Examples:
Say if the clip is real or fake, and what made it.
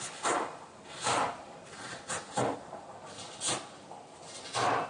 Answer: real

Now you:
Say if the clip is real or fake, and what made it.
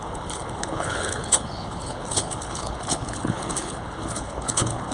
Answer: fake, codec, HILCodec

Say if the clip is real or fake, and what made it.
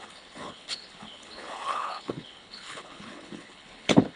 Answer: fake, codec, HILCodec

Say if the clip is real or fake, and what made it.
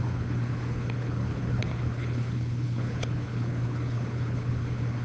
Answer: fake, codec, HILCodec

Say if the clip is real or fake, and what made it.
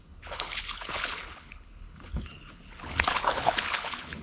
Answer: fake, codec, HILCodec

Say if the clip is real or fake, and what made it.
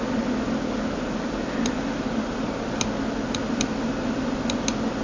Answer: real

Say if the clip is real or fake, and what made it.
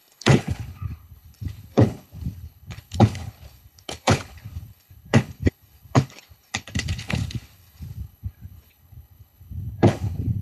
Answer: fake, codec, HILCodec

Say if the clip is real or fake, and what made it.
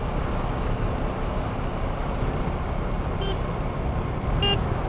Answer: real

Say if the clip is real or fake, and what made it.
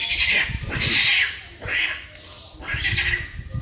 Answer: real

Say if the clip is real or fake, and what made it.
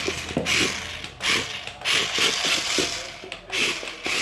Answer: real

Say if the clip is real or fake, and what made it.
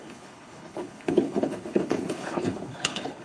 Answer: fake, codec, HILCodec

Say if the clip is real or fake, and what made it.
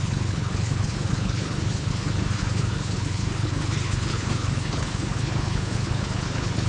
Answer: fake, codec, HILCodec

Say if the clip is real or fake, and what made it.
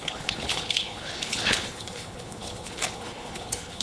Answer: fake, codec, HILCodec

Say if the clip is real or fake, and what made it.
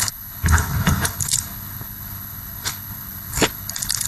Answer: fake, codec, HILCodec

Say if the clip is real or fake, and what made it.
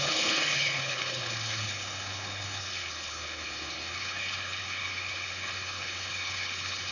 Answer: fake, codec, HILCodec